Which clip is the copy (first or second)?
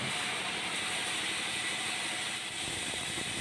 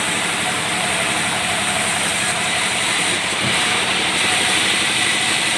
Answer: second